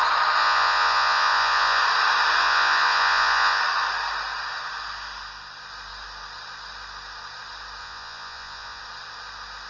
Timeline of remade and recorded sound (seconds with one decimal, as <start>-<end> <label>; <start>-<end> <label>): 0.0-0.4 recorded; 0.4-1.8 remade; 1.8-2.4 recorded; 2.4-3.6 remade; 3.6-7.8 recorded; 7.8-8.8 remade; 8.8-9.7 recorded